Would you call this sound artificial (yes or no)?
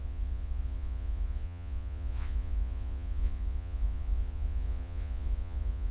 yes